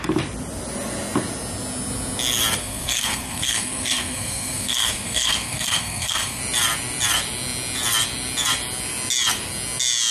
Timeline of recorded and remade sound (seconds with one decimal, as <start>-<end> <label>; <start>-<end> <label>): 0.0-2.6 recorded; 2.6-6.4 remade; 6.4-10.1 recorded